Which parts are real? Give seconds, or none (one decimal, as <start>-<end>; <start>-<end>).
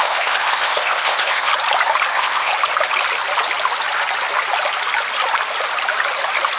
1.5-2.1; 2.5-6.6